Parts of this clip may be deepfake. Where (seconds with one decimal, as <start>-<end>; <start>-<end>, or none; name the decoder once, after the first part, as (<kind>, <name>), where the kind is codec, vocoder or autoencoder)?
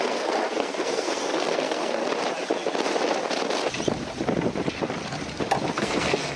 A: 0.0-2.0 (codec, SNAC); 5.7-6.4